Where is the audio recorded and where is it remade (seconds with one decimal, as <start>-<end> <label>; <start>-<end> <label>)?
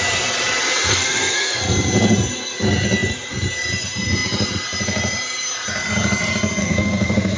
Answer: 0.0-0.9 recorded; 0.9-1.6 remade; 1.6-6.6 recorded; 6.6-7.4 remade